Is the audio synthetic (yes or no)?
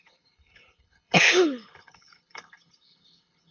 yes